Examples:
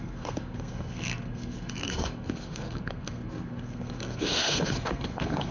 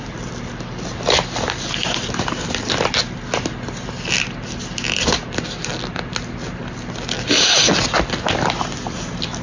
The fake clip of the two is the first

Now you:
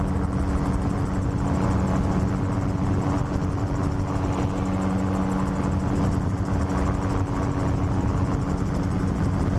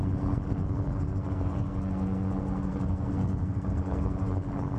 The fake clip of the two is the second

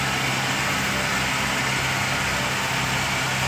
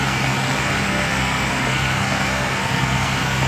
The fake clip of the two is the second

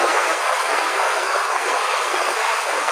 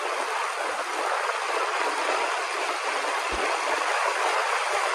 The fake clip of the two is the first